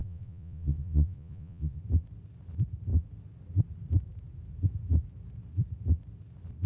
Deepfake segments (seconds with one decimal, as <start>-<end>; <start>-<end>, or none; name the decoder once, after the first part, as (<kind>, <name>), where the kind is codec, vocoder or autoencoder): 0.0-1.8 (vocoder, Vocos)